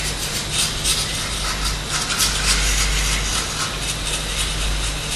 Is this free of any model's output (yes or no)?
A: yes